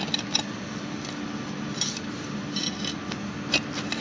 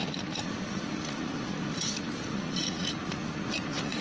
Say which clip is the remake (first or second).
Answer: second